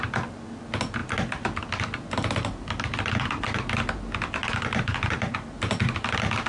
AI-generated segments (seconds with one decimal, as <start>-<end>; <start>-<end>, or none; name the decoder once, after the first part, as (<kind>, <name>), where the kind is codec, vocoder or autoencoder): 4.4-5.3 (vocoder, BigVGAN v2)